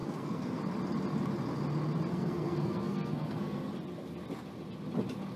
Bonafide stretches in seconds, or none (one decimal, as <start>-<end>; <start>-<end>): 0.6-2.1; 3.7-5.4